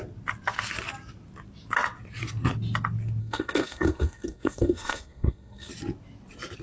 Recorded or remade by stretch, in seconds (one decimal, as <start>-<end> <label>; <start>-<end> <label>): 0.0-3.2 recorded; 3.2-5.7 remade; 5.7-6.6 recorded